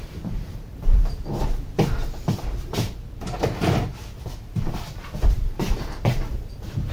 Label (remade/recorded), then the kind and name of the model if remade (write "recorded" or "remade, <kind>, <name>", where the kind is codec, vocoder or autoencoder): remade, vocoder, BigVGAN v2